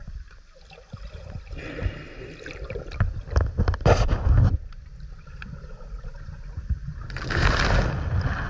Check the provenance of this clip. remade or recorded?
recorded